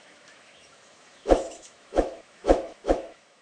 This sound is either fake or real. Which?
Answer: fake